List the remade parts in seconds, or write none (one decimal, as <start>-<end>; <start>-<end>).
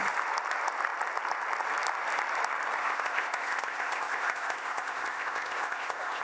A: 2.8-6.2